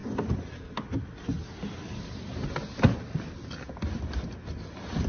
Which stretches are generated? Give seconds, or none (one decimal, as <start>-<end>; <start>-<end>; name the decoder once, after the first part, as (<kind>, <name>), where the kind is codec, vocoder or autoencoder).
none

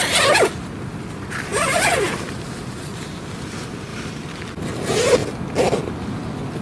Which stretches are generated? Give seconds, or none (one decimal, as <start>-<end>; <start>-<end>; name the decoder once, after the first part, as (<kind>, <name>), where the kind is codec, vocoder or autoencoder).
3.9-4.5 (vocoder, BigVGAN v2); 5.2-5.8